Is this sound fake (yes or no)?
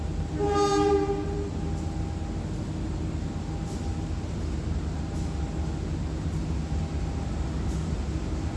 no